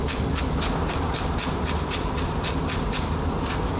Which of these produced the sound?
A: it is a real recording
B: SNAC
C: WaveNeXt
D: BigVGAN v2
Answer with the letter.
A